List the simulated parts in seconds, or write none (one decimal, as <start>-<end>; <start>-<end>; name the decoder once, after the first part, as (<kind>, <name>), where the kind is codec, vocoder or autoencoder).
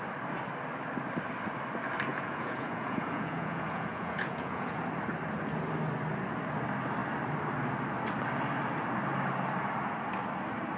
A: 2.1-4.8 (vocoder, Vocos)